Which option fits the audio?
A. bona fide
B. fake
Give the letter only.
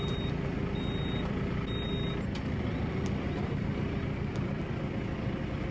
A